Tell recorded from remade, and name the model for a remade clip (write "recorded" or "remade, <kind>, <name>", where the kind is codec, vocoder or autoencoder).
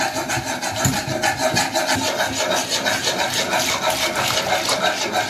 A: recorded